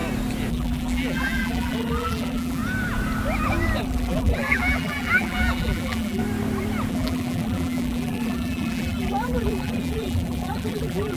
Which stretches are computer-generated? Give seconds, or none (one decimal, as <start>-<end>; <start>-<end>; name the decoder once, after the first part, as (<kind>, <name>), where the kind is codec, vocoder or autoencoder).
0.5-2.6 (vocoder, BigVGAN v2); 3.8-6.2; 6.9-11.2